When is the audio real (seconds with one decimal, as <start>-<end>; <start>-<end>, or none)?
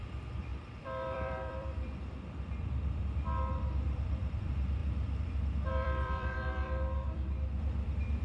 none